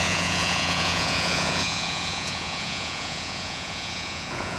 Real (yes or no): no